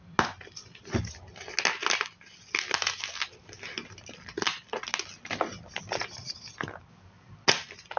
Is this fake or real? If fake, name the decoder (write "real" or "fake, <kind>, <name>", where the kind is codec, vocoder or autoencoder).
real